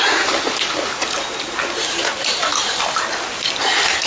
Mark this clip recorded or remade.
recorded